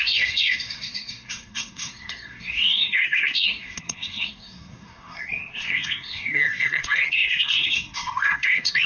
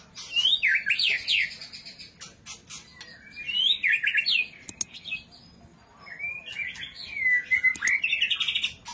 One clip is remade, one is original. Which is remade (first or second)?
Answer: first